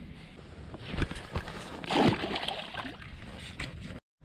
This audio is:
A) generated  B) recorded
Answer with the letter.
B